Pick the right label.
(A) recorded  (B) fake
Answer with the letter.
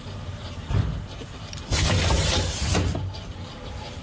B